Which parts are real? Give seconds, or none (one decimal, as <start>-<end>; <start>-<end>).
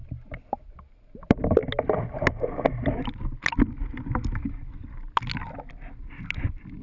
0.0-0.5; 1.6-5.7